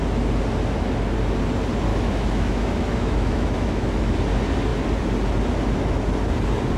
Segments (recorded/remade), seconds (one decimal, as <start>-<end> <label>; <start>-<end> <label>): 0.0-1.9 recorded; 1.9-4.2 remade; 4.2-6.8 recorded